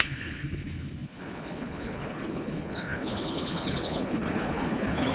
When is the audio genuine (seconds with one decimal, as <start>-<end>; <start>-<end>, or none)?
none